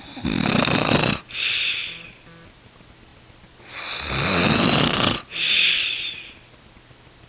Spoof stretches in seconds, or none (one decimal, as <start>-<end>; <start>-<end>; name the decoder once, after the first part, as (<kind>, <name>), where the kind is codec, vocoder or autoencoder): none